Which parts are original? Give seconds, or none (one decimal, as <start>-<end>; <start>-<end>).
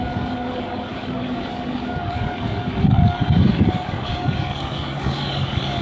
none